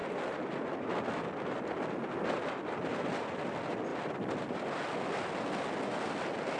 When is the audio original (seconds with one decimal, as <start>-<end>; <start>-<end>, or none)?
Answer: 0.0-3.9; 4.6-6.6

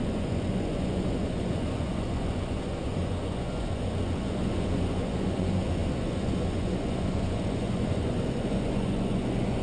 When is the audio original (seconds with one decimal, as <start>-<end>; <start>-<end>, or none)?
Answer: none